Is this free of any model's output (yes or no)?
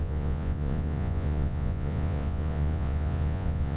no